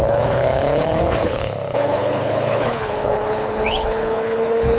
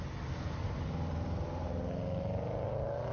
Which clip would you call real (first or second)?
second